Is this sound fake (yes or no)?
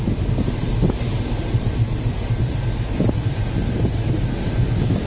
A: no